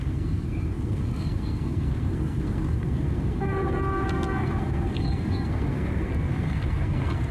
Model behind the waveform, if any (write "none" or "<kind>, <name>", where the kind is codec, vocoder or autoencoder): codec, SNAC